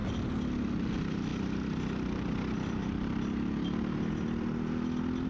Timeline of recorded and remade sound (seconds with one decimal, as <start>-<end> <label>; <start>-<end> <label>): 0.0-5.3 recorded